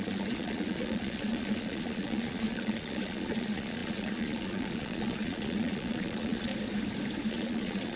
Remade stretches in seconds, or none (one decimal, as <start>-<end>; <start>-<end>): 0.0-6.5; 7.3-8.0